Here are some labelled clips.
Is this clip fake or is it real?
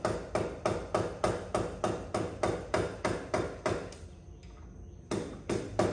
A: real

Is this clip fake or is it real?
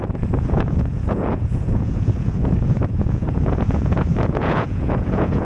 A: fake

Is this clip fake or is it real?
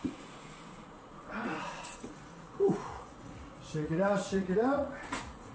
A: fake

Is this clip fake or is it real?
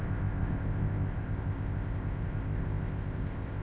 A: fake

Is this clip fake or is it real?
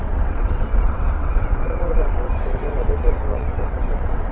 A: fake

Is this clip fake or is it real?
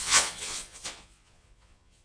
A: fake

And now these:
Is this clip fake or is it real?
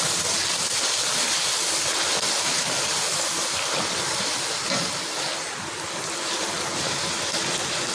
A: real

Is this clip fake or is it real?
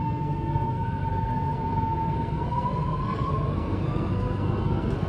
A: fake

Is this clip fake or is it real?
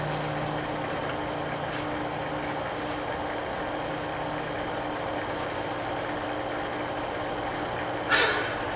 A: real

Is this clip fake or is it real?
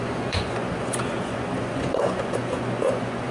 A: fake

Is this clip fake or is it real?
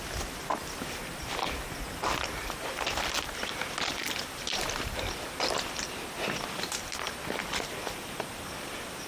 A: real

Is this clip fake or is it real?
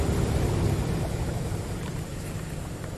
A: real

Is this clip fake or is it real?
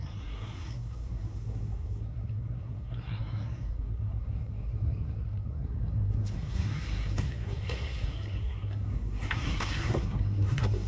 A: fake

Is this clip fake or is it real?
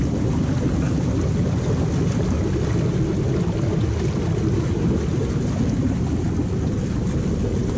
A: real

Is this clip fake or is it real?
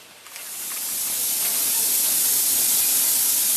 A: real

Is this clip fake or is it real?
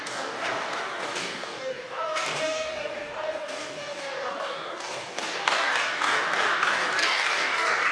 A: fake